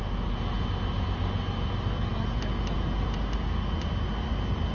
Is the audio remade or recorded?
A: recorded